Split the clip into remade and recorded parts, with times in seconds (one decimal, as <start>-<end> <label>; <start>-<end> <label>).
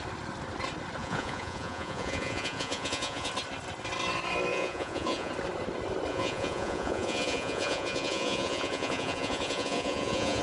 0.0-1.0 recorded; 1.0-3.3 remade; 3.3-4.5 recorded; 4.5-5.3 remade; 5.3-6.1 recorded; 6.1-10.4 remade